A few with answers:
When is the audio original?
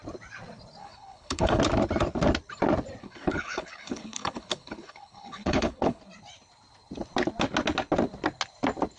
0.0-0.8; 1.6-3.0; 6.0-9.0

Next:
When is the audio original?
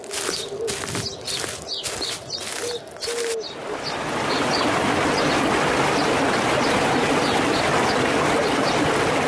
0.0-9.3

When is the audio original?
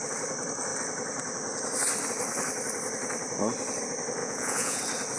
0.0-4.2; 4.8-5.2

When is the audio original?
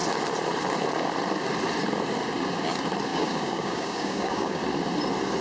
0.0-3.1; 4.6-5.4